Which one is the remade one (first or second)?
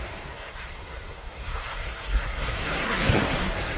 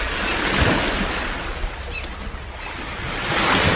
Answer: first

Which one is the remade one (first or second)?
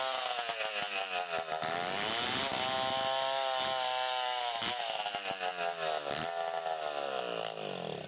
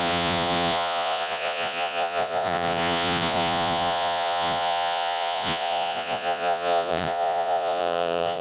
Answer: second